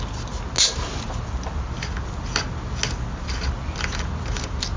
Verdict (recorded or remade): recorded